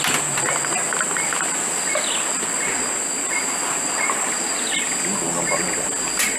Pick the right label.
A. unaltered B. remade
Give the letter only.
A